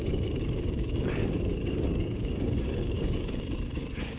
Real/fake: fake